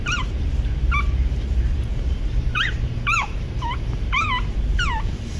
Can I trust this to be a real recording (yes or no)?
no